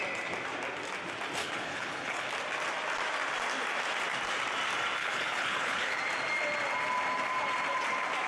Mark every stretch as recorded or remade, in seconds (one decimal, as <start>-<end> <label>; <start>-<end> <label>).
0.0-1.4 recorded; 1.4-2.3 remade; 2.3-5.0 recorded; 5.0-6.0 remade; 6.0-8.3 recorded